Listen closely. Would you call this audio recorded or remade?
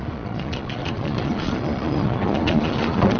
remade